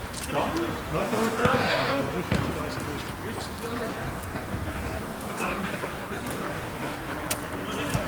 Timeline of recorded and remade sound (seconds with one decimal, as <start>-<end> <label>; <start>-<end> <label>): 0.0-1.0 recorded; 1.0-2.0 remade; 2.0-3.9 recorded; 3.9-7.1 remade; 7.1-8.1 recorded